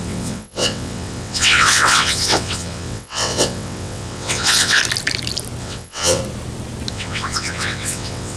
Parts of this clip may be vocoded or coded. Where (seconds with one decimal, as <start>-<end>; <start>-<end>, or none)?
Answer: 0.0-4.8; 5.6-6.2; 6.9-8.4